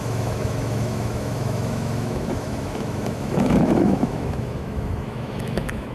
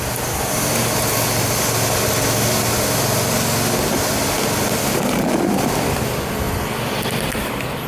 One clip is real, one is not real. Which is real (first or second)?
second